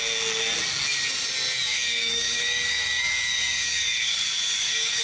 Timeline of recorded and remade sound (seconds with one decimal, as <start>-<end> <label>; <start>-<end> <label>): 0.0-1.7 recorded; 1.7-5.0 remade